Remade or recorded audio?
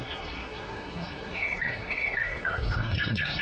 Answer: remade